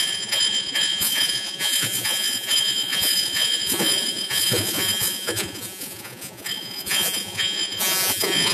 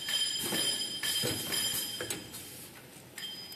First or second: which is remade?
first